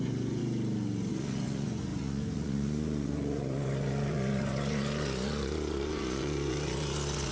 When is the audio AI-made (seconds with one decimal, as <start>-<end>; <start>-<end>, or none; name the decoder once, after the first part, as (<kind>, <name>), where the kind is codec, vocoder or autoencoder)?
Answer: 0.0-0.4 (vocoder, Vocos); 1.1-7.3